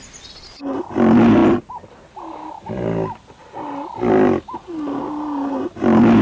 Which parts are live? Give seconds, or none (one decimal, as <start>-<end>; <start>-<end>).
0.0-6.2